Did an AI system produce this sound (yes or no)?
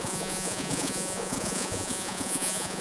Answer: yes